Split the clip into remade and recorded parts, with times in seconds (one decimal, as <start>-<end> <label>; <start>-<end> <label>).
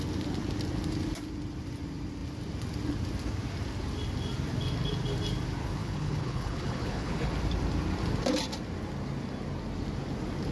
0.0-5.8 recorded; 5.8-7.3 remade; 7.3-10.5 recorded